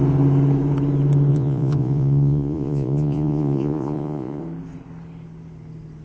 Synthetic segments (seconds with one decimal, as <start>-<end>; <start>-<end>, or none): 1.3-4.4